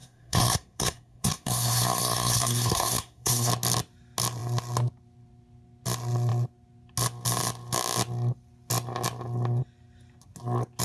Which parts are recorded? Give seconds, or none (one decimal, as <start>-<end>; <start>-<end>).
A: 3.5-10.8